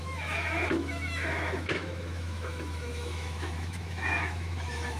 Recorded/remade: remade